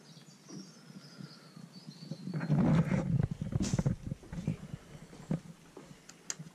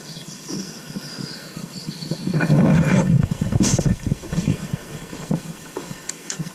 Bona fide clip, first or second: first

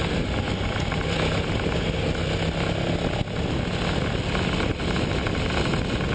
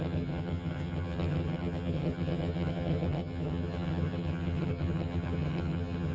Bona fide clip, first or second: first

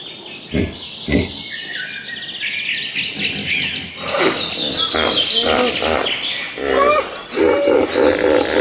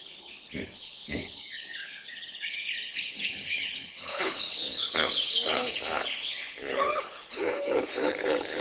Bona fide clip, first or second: first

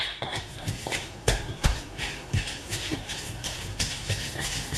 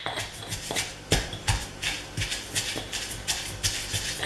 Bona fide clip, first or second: second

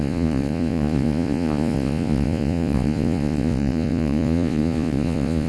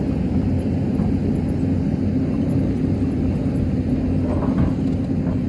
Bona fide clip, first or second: second